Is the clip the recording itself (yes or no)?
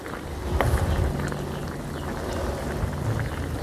yes